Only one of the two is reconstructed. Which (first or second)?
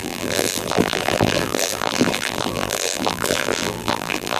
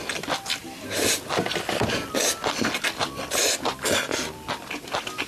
first